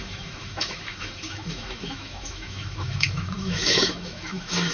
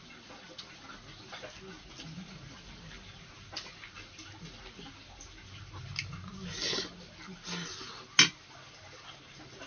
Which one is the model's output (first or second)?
first